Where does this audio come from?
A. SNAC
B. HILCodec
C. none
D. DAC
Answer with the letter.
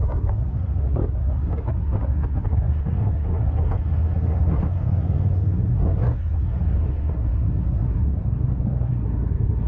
A